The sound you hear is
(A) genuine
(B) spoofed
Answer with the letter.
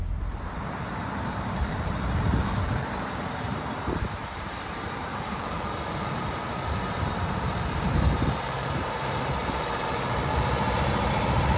B